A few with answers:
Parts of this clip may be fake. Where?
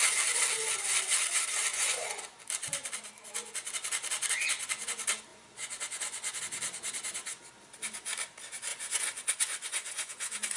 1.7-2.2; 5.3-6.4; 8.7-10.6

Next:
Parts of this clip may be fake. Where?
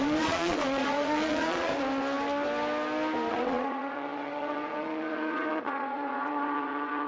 0.0-1.7; 3.3-7.1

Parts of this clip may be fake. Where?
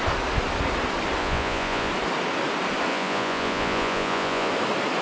1.2-1.9; 2.9-4.5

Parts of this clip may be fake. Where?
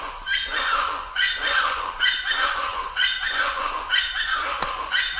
0.0-5.2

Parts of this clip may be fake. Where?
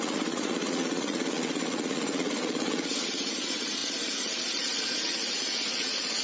0.0-6.2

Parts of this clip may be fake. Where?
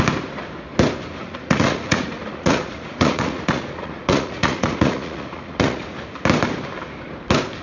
1.2-5.8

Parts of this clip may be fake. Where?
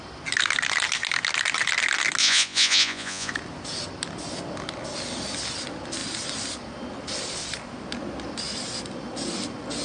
2.2-3.3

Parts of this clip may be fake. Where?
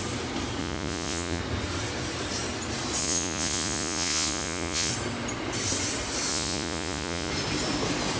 0.6-1.4; 3.0-4.9; 6.3-7.3